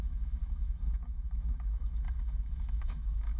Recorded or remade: remade